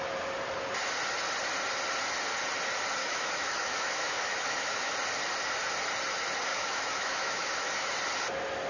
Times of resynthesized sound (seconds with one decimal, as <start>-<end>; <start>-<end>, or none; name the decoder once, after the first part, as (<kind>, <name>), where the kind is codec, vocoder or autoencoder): 3.0-4.9 (autoencoder, DAC-VAE); 6.5-7.9